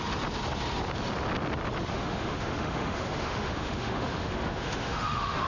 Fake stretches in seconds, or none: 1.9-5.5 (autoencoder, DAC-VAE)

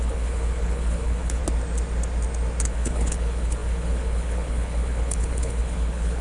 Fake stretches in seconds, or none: 0.0-1.4 (codec, HILCodec); 2.7-6.2

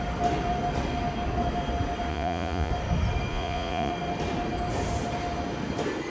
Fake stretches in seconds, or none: 2.1-2.7 (vocoder, Vocos); 3.3-3.9

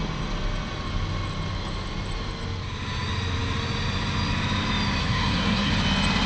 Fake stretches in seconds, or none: 5.0-5.7 (codec, SNAC)

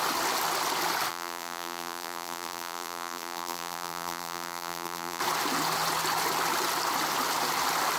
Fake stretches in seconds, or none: 1.1-5.2 (vocoder, BigVGAN v2)